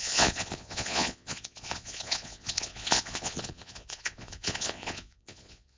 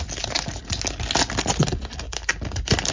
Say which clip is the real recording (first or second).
second